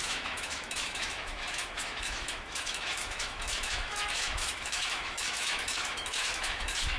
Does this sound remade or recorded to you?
remade